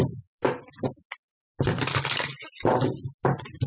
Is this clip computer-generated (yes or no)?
no